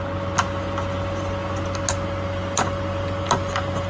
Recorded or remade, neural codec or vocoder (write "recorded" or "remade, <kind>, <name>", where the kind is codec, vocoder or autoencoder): recorded